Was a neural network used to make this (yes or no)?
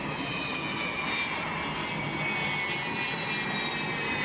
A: no